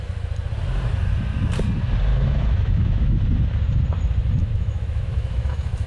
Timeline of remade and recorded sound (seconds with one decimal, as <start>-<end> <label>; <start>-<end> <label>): 0.0-2.1 recorded; 2.1-3.2 remade; 3.2-4.4 recorded; 4.4-5.9 remade